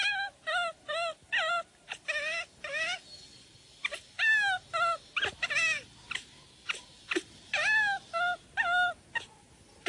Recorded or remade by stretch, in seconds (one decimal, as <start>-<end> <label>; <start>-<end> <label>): 0.0-9.9 recorded